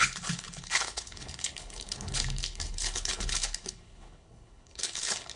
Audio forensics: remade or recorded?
remade